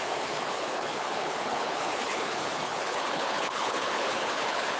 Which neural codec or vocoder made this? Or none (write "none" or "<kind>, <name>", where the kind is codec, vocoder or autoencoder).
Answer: codec, HILCodec